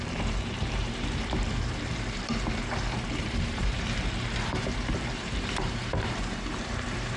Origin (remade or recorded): remade